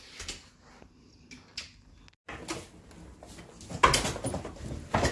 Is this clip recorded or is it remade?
recorded